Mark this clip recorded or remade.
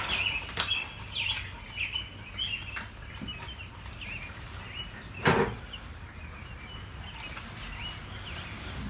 recorded